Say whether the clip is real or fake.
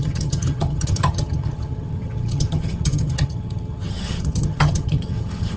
fake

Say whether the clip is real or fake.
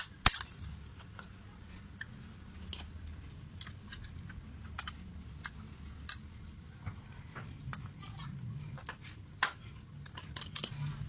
real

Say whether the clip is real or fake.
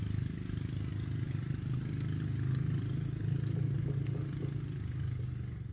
real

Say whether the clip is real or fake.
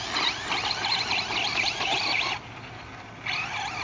real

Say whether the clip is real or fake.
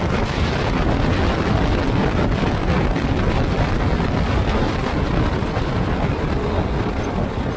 real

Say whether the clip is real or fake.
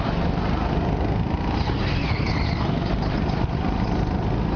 real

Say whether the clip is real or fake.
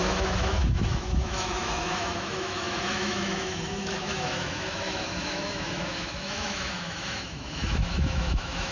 fake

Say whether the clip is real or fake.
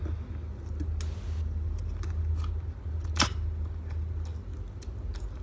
real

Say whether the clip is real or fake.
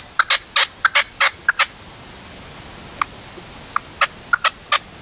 real